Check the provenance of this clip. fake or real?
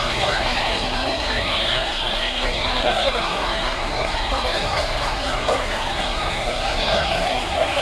fake